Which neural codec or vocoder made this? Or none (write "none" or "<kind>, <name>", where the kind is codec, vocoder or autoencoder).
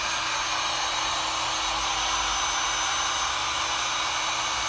none